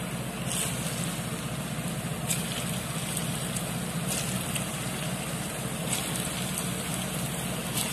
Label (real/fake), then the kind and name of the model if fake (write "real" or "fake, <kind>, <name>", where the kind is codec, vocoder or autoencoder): real